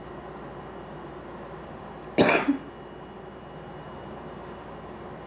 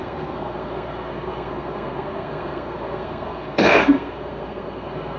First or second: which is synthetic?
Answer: second